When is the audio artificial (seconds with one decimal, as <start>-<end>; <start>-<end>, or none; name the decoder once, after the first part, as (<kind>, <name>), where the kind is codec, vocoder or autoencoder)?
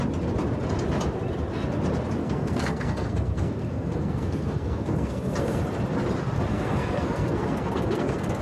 2.2-5.6 (codec, SNAC); 6.5-8.4